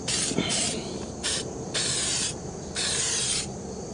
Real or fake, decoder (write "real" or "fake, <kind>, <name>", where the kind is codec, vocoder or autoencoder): fake, vocoder, BigVGAN v2